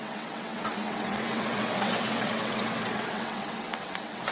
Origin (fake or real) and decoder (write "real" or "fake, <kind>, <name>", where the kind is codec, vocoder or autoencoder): fake, vocoder, WaveNeXt